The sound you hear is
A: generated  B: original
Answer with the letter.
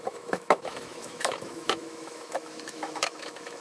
A